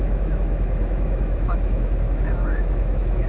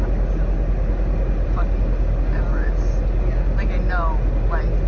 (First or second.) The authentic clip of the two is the second